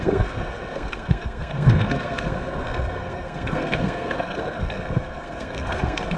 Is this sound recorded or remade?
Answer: remade